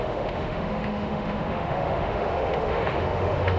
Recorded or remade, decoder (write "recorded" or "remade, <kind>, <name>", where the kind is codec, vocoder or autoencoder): remade, autoencoder, DAC-VAE